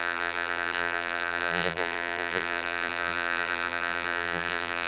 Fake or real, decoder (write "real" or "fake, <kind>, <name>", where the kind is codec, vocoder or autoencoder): fake, vocoder, BigVGAN v2